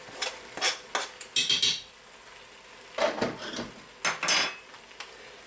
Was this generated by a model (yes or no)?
no